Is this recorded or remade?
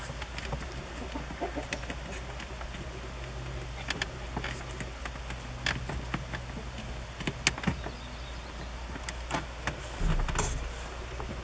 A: recorded